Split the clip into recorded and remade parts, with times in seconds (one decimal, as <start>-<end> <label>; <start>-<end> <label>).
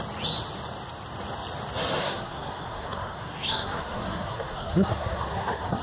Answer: 0.0-2.0 recorded; 2.0-5.8 remade